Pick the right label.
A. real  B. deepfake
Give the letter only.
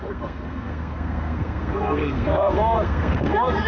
B